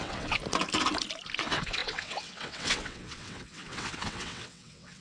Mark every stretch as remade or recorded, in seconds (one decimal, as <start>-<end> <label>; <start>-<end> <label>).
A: 0.0-0.4 remade; 0.4-1.4 recorded; 1.4-5.0 remade